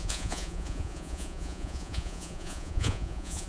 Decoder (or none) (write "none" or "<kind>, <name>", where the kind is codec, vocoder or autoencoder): vocoder, Vocos